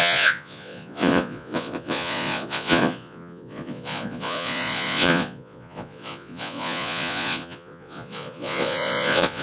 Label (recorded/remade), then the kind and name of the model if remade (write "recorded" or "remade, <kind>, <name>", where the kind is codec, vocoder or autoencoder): remade, vocoder, Vocos